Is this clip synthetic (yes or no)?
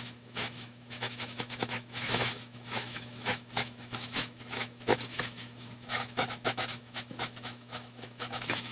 yes